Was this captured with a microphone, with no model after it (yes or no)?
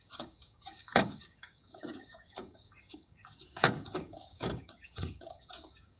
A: no